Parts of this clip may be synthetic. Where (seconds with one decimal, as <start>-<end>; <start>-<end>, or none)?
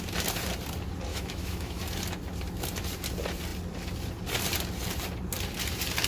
1.1-1.8